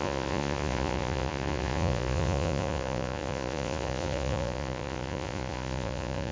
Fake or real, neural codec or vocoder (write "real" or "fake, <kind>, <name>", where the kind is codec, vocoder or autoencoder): fake, vocoder, Vocos